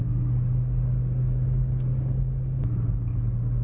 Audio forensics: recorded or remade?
recorded